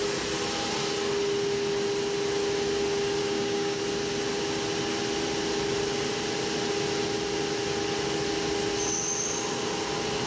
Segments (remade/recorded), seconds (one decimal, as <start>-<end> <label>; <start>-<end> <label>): 0.0-3.2 recorded; 3.2-3.8 remade; 3.8-10.3 recorded